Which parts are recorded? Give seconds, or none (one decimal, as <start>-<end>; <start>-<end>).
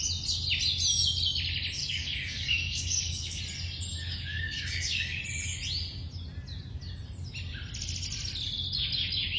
0.0-1.8; 3.4-4.0; 5.2-9.4